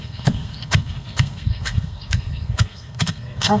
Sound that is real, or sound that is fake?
fake